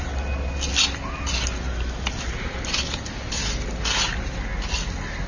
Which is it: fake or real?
real